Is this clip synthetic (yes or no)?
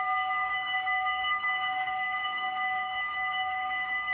yes